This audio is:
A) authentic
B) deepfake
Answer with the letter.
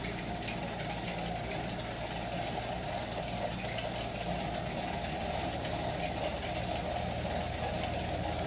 A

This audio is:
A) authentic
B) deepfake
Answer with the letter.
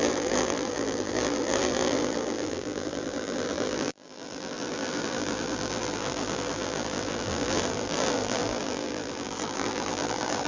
B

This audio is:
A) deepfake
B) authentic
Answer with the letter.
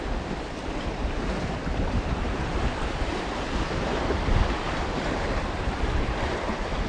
A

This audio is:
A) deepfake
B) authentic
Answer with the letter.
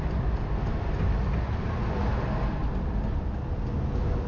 B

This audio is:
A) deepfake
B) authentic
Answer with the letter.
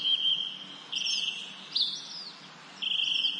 B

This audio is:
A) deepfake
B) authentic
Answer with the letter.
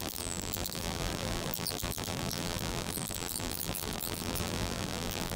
A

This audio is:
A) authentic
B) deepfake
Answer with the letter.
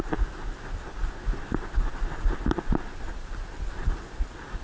A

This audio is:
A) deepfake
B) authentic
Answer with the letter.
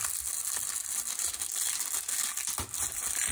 B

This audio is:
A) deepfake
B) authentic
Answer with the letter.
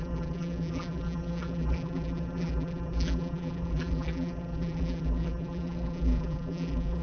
A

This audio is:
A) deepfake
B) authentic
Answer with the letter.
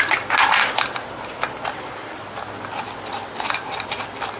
B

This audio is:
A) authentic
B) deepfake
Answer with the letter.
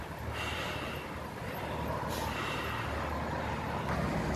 A